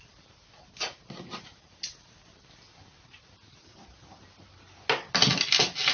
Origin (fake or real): real